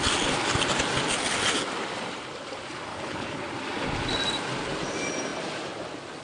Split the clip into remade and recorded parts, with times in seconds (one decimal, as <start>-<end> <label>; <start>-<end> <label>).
0.0-2.9 recorded; 2.9-3.4 remade; 3.4-6.2 recorded

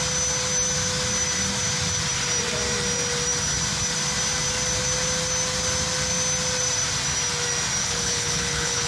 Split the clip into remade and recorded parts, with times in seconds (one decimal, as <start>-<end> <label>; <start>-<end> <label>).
0.0-7.8 recorded; 7.8-8.9 remade

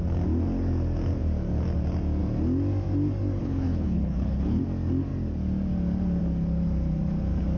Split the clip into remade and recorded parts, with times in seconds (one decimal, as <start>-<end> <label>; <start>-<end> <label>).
0.0-3.4 recorded; 3.4-4.6 remade; 4.6-7.6 recorded

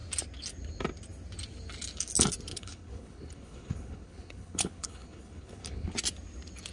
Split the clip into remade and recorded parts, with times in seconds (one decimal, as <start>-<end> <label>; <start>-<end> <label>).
0.0-2.5 recorded; 2.5-5.9 remade; 5.9-6.7 recorded